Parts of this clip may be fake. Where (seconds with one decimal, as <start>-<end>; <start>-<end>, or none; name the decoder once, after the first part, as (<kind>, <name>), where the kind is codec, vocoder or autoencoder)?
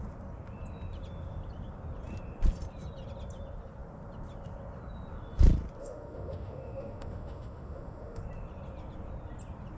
5.8-8.2 (autoencoder, DAC-VAE)